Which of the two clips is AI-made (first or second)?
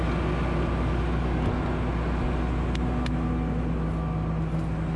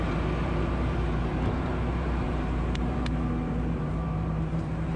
second